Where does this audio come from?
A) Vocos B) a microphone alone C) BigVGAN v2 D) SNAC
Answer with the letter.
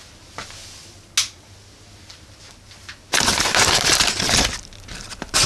B